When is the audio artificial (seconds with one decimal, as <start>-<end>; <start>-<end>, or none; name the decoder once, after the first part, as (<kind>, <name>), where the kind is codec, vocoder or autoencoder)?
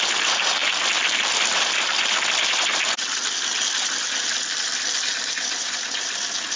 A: none